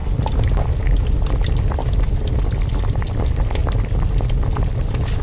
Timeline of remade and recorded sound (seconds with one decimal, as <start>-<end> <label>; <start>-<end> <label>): 0.0-5.2 recorded